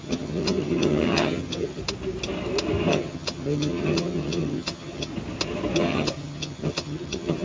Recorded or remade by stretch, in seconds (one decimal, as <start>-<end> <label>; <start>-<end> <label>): 0.0-1.8 remade; 1.8-2.9 recorded; 2.9-5.1 remade; 5.1-5.8 recorded; 5.8-7.4 remade